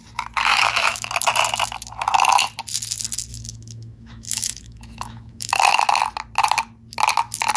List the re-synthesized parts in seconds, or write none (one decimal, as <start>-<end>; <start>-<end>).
0.5-1.1; 3.3-5.6